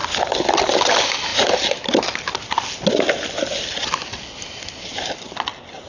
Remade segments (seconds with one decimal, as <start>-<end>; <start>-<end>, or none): none